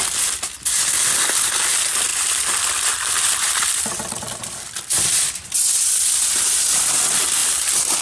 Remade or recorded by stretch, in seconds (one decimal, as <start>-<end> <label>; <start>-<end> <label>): 0.0-2.1 recorded; 2.1-6.6 remade; 6.6-7.4 recorded; 7.4-8.0 remade